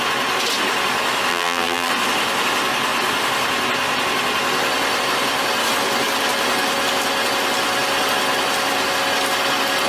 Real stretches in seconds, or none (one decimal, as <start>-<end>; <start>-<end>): 0.0-1.3; 1.9-9.9